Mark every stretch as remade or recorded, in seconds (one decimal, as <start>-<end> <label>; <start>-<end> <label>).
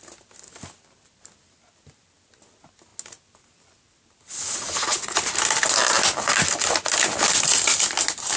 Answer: 0.0-8.4 recorded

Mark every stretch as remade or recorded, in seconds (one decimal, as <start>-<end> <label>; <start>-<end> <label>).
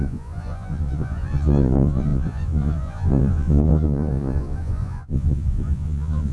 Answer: 0.0-6.3 remade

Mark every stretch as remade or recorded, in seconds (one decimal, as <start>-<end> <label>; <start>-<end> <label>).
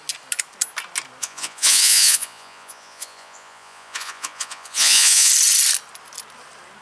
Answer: 0.0-1.2 recorded; 1.2-5.3 remade; 5.3-6.8 recorded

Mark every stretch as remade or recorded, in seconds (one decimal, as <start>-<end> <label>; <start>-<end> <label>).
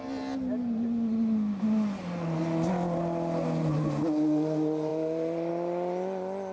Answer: 0.0-6.5 recorded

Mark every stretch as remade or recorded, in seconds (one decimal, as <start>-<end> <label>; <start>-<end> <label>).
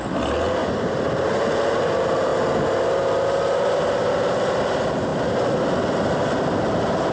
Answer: 0.0-7.1 recorded